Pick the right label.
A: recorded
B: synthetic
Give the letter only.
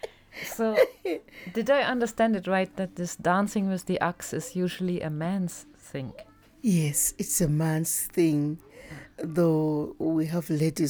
A